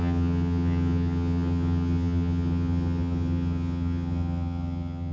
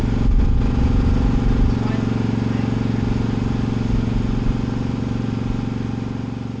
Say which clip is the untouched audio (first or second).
second